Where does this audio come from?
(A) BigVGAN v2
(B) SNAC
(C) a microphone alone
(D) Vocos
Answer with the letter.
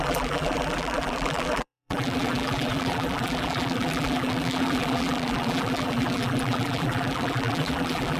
A